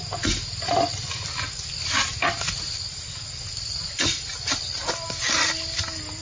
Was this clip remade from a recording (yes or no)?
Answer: no